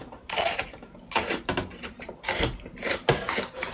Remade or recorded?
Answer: remade